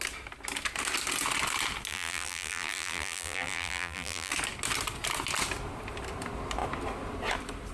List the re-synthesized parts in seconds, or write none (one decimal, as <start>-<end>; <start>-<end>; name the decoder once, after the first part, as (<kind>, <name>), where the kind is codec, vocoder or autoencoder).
1.9-4.3 (vocoder, BigVGAN v2)